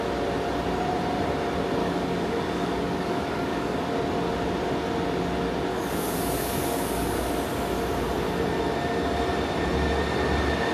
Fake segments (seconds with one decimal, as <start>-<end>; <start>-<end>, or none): 1.8-3.8; 5.7-7.3

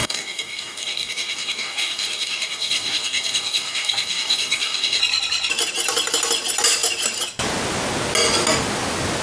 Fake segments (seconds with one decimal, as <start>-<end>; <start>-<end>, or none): 0.0-5.0

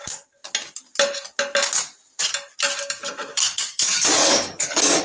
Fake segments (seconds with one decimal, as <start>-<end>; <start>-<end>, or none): 3.3-5.0

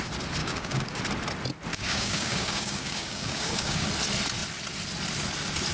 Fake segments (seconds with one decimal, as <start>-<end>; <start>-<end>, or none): 0.4-1.0; 1.7-3.9

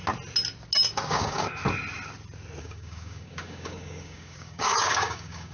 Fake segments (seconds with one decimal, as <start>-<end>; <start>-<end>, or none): 1.1-1.6; 2.6-5.5

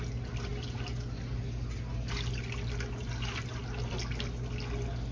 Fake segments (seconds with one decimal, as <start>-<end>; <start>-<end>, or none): none